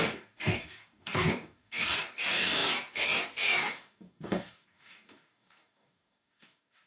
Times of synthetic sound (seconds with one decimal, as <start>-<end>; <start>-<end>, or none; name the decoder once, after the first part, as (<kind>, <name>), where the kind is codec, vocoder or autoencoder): 0.0-6.9 (codec, DAC)